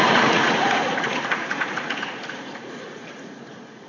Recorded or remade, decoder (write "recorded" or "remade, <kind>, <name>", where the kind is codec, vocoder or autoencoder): remade, vocoder, Vocos